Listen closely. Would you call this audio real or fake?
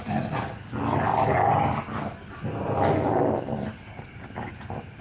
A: real